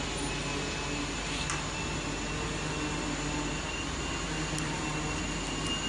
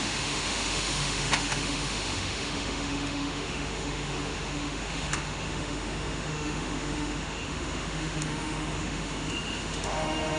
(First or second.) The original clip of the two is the first